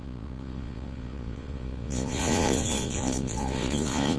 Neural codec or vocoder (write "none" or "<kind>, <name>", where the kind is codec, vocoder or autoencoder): vocoder, Vocos